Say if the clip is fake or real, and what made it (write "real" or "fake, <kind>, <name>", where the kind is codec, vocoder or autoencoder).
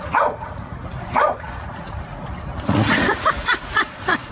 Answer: fake, vocoder, Vocos